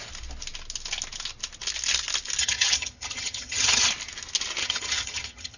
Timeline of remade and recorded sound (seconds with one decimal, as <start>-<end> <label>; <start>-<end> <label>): 0.0-2.4 recorded; 2.4-3.9 remade; 3.9-4.6 recorded; 4.6-5.6 remade